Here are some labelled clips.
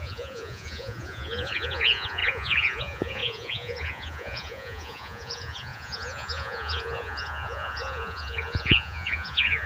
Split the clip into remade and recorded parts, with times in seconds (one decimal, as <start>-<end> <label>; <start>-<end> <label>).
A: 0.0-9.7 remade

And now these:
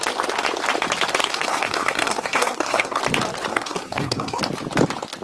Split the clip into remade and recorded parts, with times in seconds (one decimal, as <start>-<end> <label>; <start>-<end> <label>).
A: 0.0-1.2 recorded; 1.2-3.0 remade; 3.0-3.5 recorded; 3.5-4.4 remade; 4.4-5.2 recorded

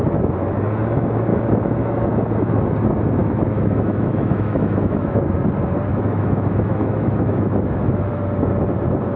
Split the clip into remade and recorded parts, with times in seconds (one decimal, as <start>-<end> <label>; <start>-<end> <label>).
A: 0.0-1.3 recorded; 1.3-2.6 remade; 2.6-3.2 recorded; 3.2-5.2 remade; 5.2-5.9 recorded; 5.9-8.1 remade; 8.1-9.2 recorded

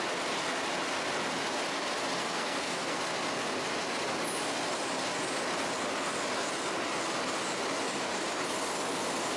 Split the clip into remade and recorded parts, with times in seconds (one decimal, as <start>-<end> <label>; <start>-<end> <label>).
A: 0.0-2.2 recorded; 2.2-3.0 remade; 3.0-9.4 recorded

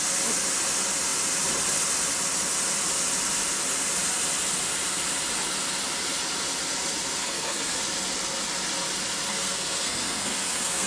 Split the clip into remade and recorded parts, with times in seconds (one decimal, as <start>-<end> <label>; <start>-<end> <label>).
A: 0.0-7.2 recorded; 7.2-7.8 remade; 7.8-9.3 recorded; 9.3-10.9 remade